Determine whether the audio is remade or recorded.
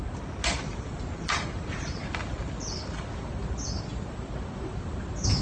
recorded